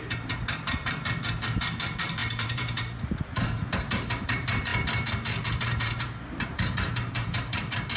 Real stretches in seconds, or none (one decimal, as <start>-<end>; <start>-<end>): 4.7-5.5